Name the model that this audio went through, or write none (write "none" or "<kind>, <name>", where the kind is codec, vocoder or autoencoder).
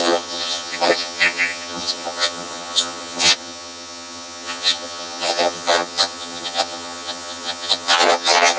vocoder, HiFi-GAN